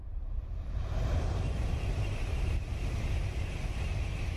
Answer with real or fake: fake